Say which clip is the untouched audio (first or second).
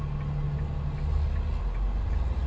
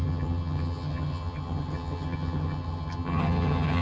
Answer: first